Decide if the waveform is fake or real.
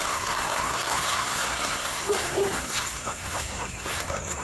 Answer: fake